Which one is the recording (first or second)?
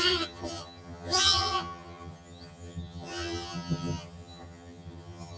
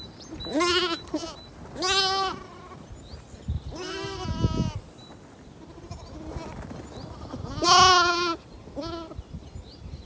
second